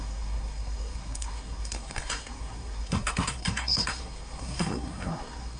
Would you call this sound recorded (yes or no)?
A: no